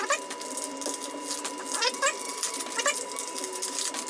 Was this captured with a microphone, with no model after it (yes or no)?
yes